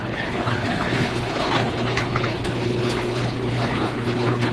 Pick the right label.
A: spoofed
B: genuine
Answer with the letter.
A